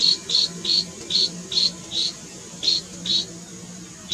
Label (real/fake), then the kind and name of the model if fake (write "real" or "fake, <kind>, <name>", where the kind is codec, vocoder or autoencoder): real